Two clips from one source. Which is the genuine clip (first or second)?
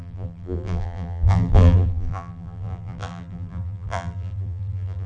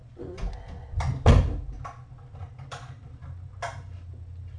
second